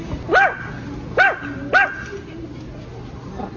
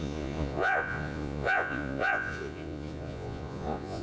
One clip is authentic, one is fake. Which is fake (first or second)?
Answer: second